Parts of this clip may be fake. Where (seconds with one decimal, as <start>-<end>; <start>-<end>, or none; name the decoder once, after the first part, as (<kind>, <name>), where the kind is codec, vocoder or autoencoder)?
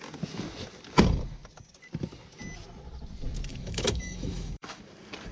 3.5-4.8 (autoencoder, DAC-VAE)